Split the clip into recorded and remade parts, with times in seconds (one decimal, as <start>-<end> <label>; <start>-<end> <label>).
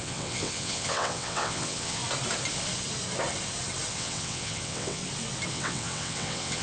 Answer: 0.0-2.0 remade; 2.0-3.9 recorded; 3.9-5.0 remade; 5.0-5.5 recorded; 5.5-6.6 remade